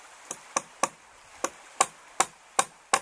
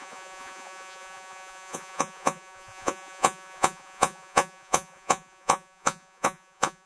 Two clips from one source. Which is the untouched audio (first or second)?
first